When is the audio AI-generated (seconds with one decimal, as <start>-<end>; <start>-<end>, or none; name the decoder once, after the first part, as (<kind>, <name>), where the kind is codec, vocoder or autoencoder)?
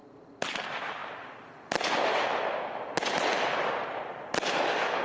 none